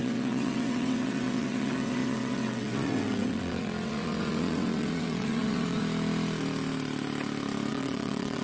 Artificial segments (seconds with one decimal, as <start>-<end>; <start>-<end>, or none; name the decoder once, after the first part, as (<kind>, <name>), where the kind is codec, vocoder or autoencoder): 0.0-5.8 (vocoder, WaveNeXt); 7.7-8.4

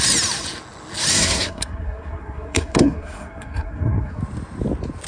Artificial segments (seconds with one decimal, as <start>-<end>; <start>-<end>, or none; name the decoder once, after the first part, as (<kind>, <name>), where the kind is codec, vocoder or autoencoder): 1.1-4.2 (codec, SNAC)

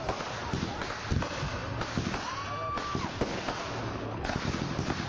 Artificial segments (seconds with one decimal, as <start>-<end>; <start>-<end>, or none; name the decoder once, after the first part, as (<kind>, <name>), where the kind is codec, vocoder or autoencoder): 3.9-4.5 (codec, HILCodec)

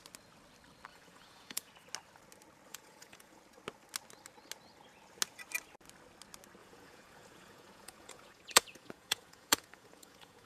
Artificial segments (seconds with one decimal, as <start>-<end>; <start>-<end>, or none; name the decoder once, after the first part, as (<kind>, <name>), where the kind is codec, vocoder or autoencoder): 0.9-1.7 (vocoder, Vocos); 2.7-3.4; 6.6-10.5

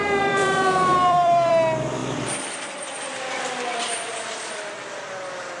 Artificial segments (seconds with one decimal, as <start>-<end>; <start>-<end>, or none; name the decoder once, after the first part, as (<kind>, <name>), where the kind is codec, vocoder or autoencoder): 0.0-1.5 (vocoder, BigVGAN v2); 2.0-4.7

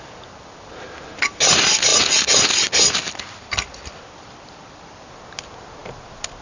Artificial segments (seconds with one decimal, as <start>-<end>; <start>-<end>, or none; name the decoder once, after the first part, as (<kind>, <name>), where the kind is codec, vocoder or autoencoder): none